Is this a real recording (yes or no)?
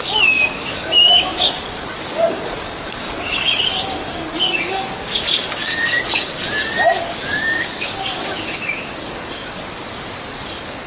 no